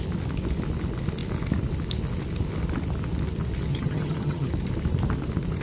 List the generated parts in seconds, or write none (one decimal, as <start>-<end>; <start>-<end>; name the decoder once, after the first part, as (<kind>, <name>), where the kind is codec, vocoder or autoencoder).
3.7-4.5 (vocoder, HiFi-GAN)